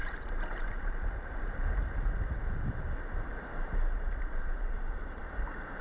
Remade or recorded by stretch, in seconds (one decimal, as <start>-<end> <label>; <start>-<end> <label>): 0.0-1.8 remade; 1.8-4.1 recorded; 4.1-5.2 remade; 5.2-5.8 recorded